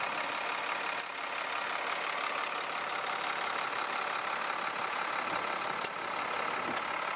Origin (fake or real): real